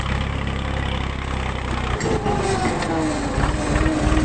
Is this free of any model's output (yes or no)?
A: yes